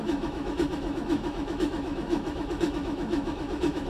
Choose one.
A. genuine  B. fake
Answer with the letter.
B